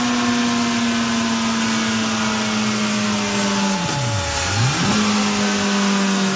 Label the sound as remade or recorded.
recorded